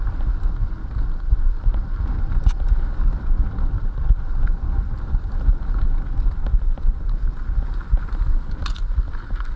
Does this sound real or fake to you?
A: real